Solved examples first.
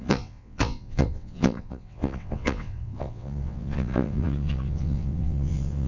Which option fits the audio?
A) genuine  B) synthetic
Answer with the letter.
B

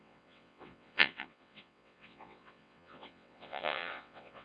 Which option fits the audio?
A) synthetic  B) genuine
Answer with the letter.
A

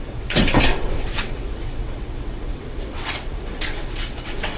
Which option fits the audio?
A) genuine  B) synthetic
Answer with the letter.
B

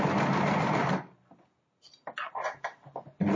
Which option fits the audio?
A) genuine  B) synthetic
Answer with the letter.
A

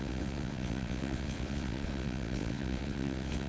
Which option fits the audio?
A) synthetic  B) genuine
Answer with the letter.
A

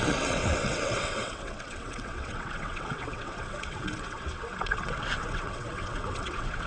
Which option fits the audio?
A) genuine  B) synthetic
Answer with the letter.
B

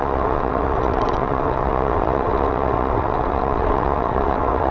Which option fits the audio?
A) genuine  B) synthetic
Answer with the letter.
B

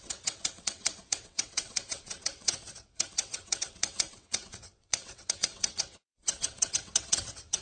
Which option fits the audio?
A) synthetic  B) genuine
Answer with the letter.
A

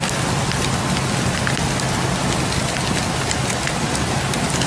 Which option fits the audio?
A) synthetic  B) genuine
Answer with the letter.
B